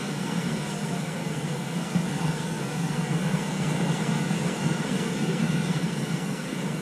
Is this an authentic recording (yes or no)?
no